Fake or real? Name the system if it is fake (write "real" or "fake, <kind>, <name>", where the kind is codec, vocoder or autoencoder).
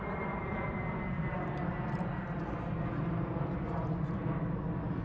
real